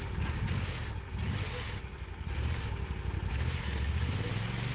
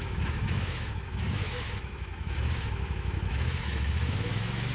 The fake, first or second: second